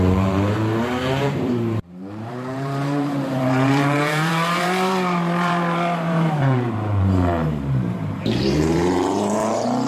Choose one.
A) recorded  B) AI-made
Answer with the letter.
B